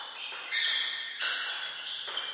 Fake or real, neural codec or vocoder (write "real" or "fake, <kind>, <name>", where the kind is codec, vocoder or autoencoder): real